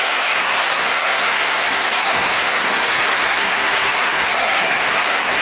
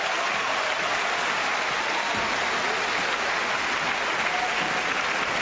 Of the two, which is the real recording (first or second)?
second